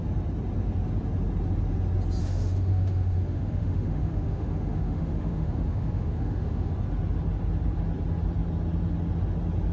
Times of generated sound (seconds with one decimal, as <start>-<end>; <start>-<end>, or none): 2.2-6.7